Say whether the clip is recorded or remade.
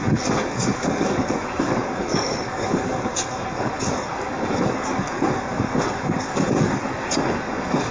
remade